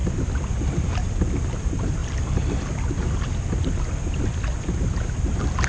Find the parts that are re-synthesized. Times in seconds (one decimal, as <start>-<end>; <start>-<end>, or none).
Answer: 1.5-2.0

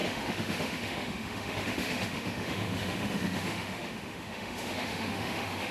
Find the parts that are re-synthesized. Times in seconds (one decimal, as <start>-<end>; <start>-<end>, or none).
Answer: 0.0-5.7

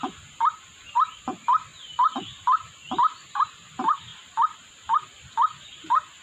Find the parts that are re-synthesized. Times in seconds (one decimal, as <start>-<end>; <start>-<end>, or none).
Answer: none

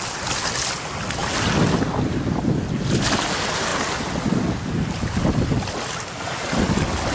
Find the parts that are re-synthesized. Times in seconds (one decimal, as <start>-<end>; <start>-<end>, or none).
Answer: none

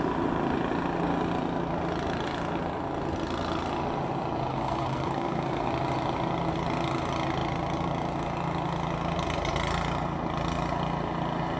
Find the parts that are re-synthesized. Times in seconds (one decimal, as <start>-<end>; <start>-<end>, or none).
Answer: 4.5-5.7

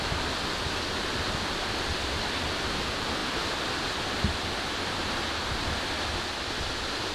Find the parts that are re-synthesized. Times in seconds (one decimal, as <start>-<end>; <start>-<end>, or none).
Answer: none

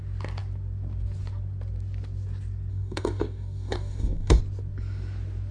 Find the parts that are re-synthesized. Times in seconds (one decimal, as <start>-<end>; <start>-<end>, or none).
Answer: 2.7-4.4